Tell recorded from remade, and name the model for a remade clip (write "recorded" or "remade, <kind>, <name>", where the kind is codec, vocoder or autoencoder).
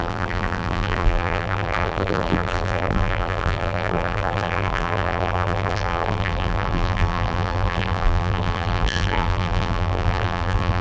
remade, vocoder, BigVGAN v2